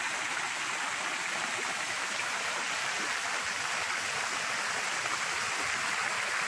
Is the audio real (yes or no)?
yes